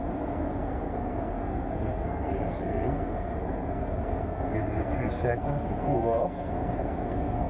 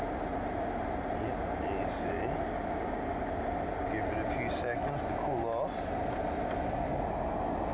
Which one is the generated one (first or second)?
first